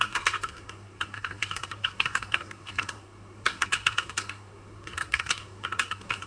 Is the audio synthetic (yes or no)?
yes